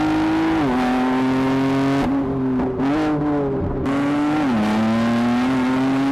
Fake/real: real